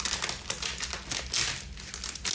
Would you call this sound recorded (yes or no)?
yes